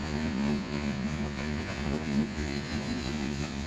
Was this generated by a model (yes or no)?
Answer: yes